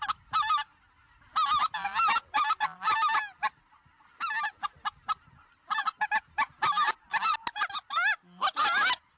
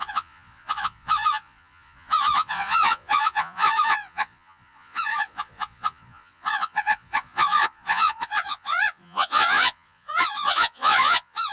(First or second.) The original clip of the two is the first